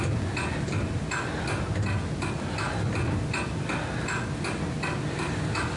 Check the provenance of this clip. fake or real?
real